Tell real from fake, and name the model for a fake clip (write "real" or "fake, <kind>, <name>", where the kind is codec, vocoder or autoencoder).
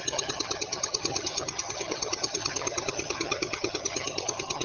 fake, vocoder, HiFi-GAN